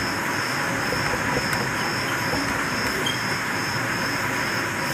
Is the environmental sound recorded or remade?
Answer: recorded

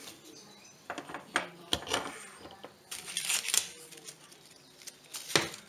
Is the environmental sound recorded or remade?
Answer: recorded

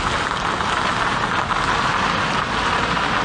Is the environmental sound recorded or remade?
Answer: recorded